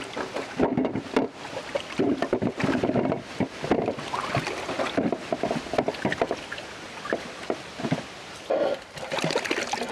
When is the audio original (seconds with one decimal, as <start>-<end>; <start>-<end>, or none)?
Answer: 0.0-9.9

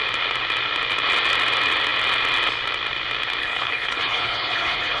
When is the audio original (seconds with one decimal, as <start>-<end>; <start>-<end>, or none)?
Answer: 0.0-3.4

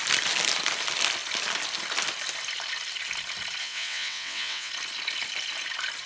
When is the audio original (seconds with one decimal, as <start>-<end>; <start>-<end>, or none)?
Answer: 0.0-3.6; 4.7-6.1

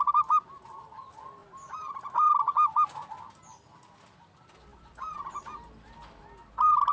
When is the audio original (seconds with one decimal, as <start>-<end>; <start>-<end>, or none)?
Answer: 0.0-6.9

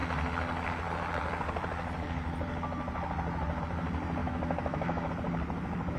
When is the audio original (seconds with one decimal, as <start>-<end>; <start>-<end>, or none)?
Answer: 0.0-4.2; 5.1-6.0

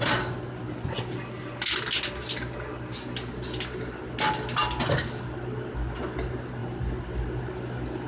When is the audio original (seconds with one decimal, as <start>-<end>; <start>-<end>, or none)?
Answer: 0.0-8.1

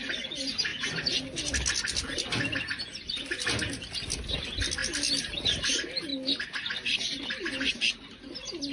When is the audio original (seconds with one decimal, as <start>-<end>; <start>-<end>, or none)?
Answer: 0.0-8.7